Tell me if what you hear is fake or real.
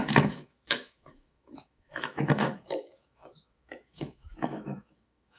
fake